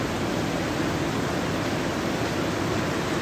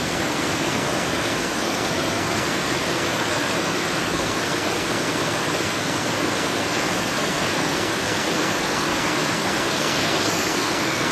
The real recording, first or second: first